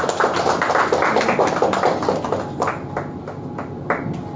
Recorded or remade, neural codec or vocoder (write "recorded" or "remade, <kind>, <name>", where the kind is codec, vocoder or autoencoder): recorded